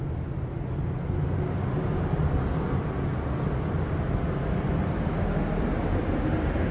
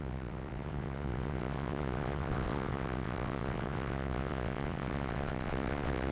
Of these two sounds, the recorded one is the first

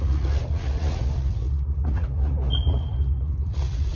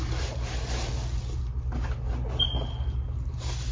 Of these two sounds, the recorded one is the second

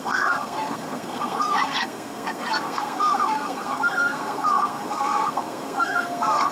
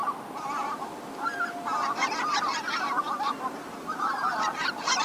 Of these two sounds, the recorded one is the second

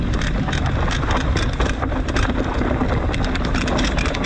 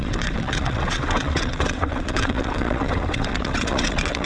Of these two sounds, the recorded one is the first